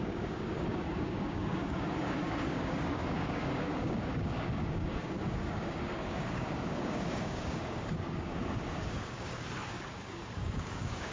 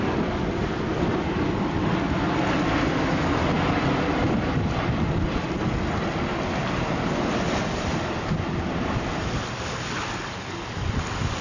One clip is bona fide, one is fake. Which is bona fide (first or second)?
second